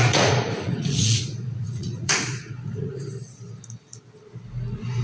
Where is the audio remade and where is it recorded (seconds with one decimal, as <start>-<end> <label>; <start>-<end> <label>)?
0.0-3.0 remade; 3.0-5.0 recorded